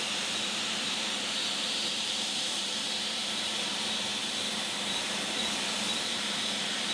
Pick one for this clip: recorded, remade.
remade